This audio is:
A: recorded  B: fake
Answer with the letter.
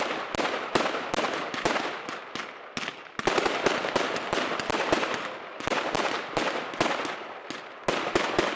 A